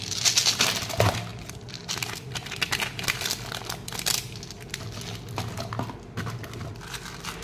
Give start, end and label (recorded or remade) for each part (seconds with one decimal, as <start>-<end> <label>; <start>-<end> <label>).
0.0-7.4 recorded